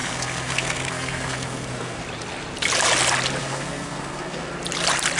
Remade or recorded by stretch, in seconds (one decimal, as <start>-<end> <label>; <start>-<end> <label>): 0.0-2.0 remade; 2.0-3.4 recorded; 3.4-4.5 remade; 4.5-5.2 recorded